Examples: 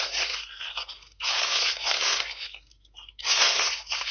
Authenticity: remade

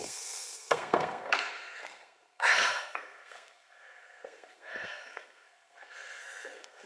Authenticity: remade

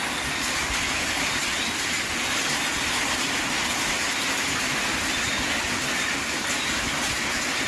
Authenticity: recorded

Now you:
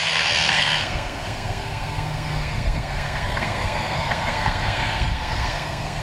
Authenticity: remade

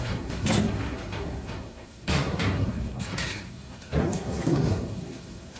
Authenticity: remade